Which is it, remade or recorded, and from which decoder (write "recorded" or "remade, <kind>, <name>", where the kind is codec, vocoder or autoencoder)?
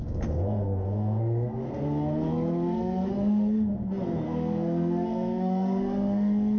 remade, codec, SNAC